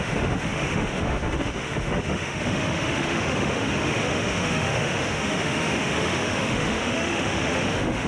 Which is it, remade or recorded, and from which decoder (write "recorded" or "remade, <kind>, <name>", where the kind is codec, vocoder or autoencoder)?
remade, autoencoder, DAC-VAE